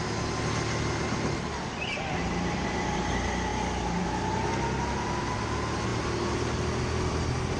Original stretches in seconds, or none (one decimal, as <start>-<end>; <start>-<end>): 0.0-7.6